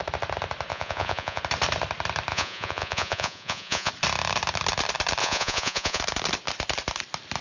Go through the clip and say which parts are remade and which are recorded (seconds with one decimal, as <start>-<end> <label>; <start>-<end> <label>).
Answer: 0.0-0.7 recorded; 0.7-1.4 remade; 1.4-2.3 recorded; 2.3-3.9 remade; 3.9-5.2 recorded; 5.2-6.0 remade; 6.0-7.4 recorded